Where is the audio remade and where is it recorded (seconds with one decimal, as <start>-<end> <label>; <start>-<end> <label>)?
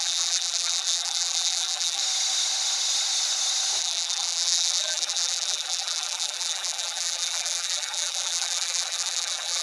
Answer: 0.0-2.0 remade; 2.0-3.8 recorded; 3.8-9.6 remade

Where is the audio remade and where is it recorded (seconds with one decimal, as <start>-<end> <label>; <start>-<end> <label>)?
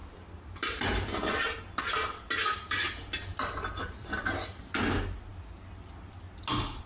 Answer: 0.0-2.5 recorded; 2.5-4.2 remade; 4.2-5.3 recorded; 5.3-6.4 remade; 6.4-6.9 recorded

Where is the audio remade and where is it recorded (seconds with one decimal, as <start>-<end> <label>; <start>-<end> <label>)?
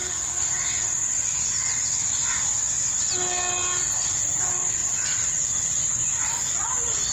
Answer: 0.0-7.1 recorded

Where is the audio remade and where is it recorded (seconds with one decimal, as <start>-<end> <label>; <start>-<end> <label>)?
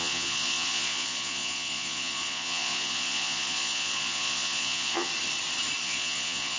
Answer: 0.0-5.1 remade; 5.1-5.8 recorded; 5.8-6.6 remade